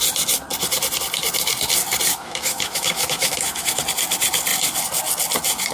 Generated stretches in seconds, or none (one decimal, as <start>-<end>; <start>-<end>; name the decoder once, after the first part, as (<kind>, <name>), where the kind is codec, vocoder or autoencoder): 2.1-3.8 (autoencoder, DAC-VAE)